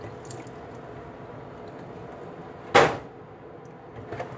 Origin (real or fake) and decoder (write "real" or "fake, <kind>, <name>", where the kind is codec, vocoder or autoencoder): real